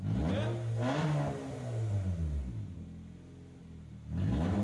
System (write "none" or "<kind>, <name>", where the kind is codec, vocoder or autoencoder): none